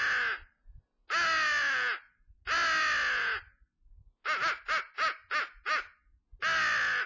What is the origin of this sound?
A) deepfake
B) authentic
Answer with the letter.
B